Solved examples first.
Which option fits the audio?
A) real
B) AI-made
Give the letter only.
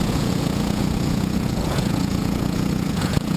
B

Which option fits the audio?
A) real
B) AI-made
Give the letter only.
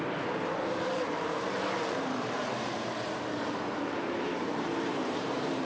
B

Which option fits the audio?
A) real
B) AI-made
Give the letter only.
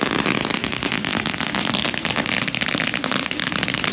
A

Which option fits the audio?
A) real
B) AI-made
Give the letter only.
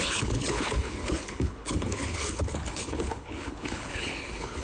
B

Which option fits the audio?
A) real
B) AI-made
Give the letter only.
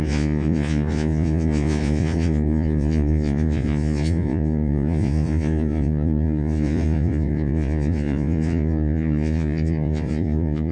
B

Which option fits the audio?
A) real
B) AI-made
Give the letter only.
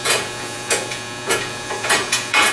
B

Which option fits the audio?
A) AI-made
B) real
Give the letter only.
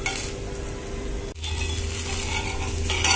B